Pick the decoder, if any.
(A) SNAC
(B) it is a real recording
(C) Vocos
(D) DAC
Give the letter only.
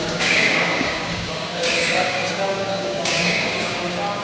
D